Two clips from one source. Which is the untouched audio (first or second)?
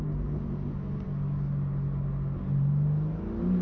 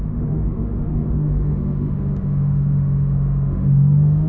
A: first